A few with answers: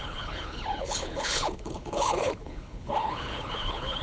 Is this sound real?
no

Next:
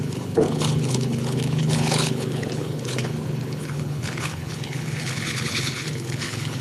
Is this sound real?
no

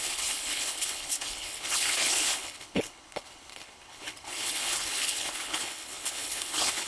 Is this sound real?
no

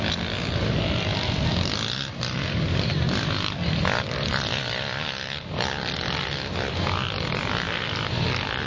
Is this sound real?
yes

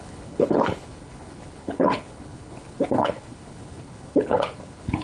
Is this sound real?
no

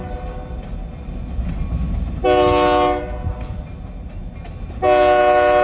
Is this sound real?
yes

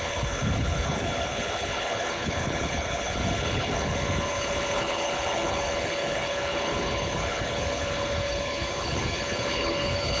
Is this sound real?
no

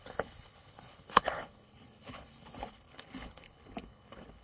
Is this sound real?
no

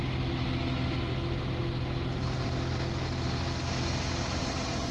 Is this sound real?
yes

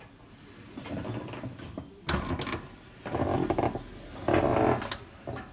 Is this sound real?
yes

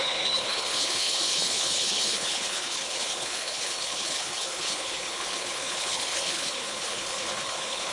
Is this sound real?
no